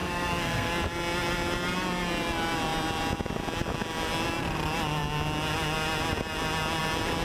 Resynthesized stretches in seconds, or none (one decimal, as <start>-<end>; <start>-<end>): 0.0-0.7